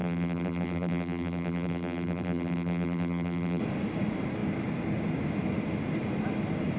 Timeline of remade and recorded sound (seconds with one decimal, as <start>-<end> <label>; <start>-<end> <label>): 0.0-3.6 remade; 3.6-6.8 recorded